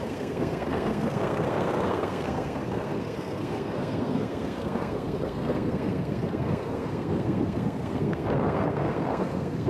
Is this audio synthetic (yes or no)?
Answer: yes